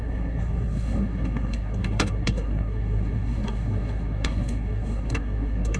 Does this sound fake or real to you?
fake